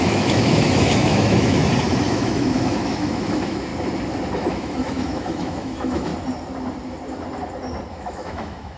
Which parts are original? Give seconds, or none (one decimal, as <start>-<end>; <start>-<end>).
1.6-2.1; 3.7-4.5; 6.1-7.9